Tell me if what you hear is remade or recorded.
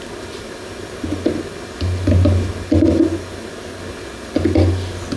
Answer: recorded